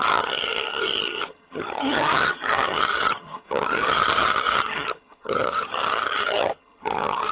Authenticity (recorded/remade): remade